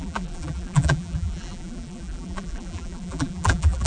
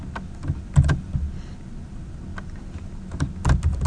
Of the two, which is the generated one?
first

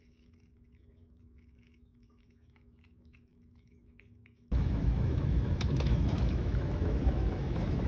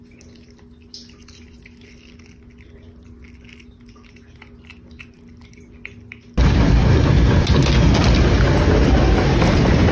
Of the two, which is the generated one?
first